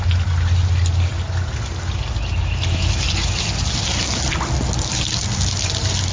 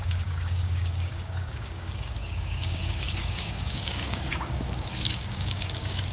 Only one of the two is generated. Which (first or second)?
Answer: second